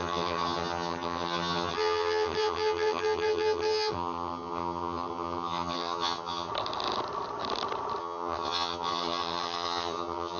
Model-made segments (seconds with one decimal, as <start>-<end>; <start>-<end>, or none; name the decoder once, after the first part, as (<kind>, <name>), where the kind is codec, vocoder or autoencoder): 0.0-6.5 (vocoder, HiFi-GAN); 8.0-10.4